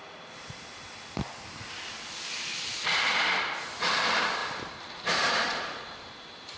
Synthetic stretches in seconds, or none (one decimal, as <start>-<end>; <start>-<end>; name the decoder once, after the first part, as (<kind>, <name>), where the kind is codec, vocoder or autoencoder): 4.4-6.6 (vocoder, BigVGAN v2)